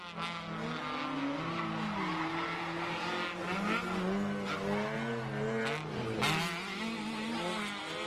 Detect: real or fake real